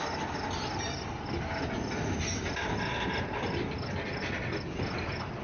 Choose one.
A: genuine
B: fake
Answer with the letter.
A